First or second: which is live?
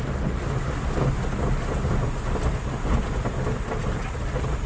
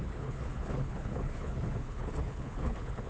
first